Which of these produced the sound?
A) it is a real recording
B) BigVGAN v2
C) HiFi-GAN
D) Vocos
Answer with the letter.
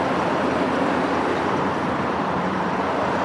B